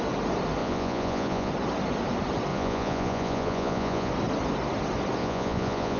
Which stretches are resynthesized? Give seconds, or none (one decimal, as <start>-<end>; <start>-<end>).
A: 0.6-1.5; 2.5-4.1; 5.2-6.0